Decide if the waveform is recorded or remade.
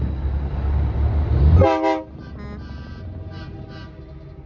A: recorded